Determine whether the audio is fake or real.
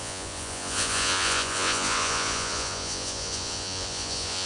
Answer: fake